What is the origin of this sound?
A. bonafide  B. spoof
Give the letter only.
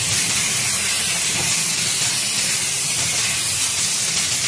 A